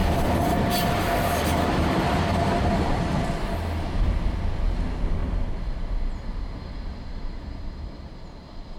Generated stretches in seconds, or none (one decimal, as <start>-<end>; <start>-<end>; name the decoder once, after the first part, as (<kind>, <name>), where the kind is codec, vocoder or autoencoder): 0.0-3.2 (vocoder, BigVGAN v2); 5.2-8.1